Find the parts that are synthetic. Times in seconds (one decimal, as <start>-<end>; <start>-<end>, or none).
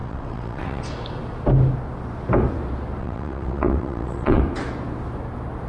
0.0-0.8; 3.0-4.4